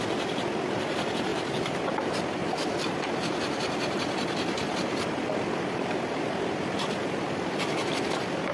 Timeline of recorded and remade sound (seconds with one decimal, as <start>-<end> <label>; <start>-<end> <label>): 0.0-8.5 remade